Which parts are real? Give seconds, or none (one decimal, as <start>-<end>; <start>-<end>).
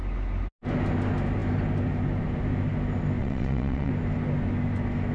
0.0-3.2; 3.9-5.1